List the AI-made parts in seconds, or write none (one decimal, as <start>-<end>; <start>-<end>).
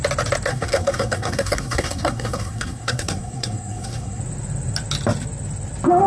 0.5-4.2